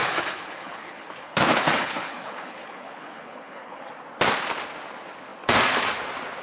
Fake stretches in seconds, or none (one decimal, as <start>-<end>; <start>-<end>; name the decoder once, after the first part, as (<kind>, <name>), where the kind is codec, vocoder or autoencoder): 0.0-3.8 (codec, HILCodec)